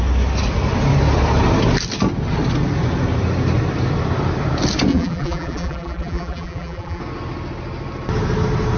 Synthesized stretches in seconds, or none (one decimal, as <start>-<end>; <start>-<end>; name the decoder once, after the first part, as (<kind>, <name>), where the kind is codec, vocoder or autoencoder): 4.9-7.0 (vocoder, BigVGAN v2)